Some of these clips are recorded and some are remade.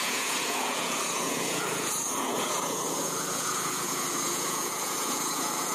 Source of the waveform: remade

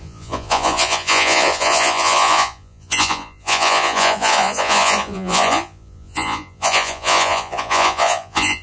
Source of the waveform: remade